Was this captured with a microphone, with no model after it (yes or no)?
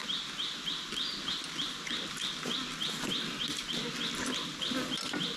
yes